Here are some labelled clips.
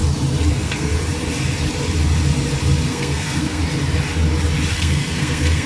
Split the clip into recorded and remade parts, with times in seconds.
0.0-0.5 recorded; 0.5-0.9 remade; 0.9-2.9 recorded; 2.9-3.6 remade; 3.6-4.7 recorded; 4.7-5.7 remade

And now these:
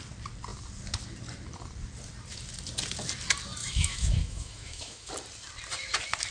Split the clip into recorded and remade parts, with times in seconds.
0.0-3.6 recorded; 3.6-5.1 remade; 5.1-6.3 recorded

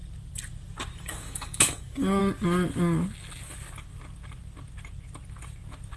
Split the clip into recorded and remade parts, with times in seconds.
0.0-1.0 recorded; 1.0-2.2 remade; 2.2-6.0 recorded

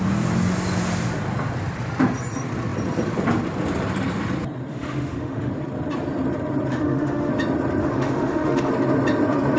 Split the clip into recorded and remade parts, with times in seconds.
0.0-4.7 recorded; 4.7-5.5 remade; 5.5-6.7 recorded; 6.7-7.3 remade; 7.3-7.8 recorded; 7.8-8.7 remade; 8.7-9.6 recorded

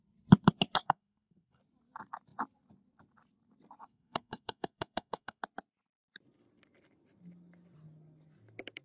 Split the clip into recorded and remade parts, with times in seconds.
0.0-0.8 recorded; 0.8-1.6 remade; 1.6-3.8 recorded; 3.8-5.4 remade; 5.4-8.8 recorded

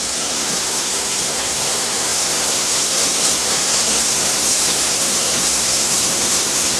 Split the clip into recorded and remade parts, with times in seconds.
0.0-6.8 remade